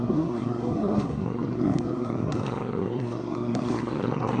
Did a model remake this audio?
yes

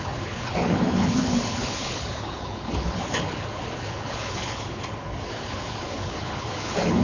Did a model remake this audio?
yes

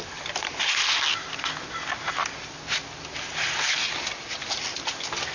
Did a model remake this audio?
no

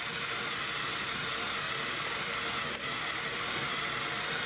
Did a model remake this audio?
no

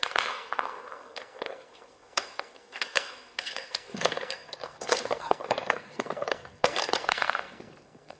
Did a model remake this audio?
yes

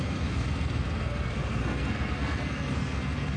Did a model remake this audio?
yes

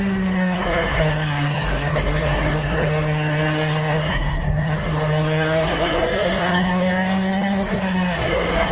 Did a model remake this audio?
yes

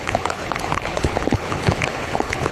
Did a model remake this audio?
yes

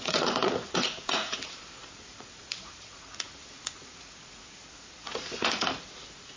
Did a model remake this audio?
yes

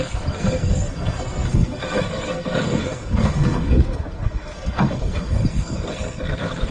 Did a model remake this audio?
yes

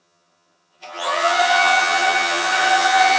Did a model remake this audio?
yes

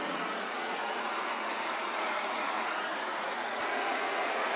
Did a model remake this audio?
yes